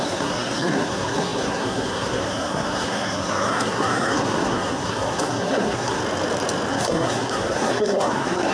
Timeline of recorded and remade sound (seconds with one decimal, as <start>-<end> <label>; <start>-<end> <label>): 0.0-6.0 remade; 6.0-6.7 recorded; 6.7-8.5 remade